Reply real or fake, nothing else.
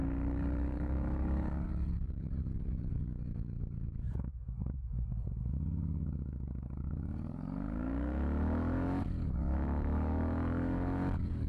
fake